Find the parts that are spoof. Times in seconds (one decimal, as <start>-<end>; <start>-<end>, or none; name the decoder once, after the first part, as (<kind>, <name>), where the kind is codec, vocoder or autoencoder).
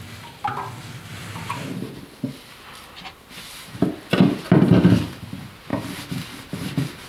none